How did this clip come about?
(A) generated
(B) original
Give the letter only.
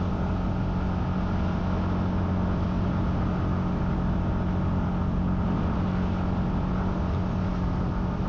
B